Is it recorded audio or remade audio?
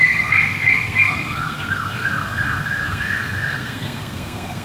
remade